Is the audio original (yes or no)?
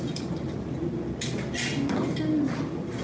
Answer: yes